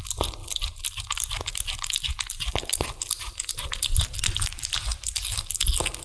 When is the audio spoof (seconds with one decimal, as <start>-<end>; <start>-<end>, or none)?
none